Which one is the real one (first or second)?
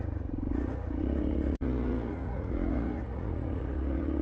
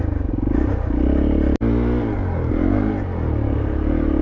second